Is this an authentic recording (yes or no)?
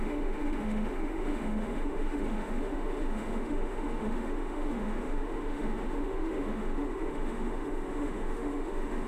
no